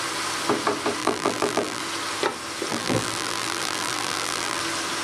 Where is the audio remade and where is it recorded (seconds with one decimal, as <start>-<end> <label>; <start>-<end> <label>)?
0.0-1.0 recorded; 1.0-1.8 remade; 1.8-2.7 recorded; 2.7-4.6 remade; 4.6-5.0 recorded